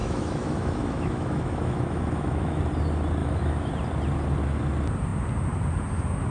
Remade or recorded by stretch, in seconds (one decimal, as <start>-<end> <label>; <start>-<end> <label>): 0.0-2.6 remade; 2.6-3.2 recorded; 3.2-3.7 remade; 3.7-6.3 recorded